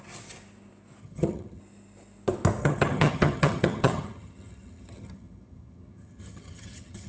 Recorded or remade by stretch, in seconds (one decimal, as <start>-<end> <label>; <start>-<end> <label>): 0.0-1.0 recorded; 1.0-1.6 remade; 1.6-2.6 recorded; 2.6-7.1 remade